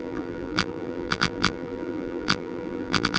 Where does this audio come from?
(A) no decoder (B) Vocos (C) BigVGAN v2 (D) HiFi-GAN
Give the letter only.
C